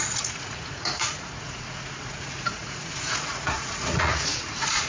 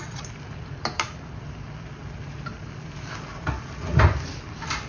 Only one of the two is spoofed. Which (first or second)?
first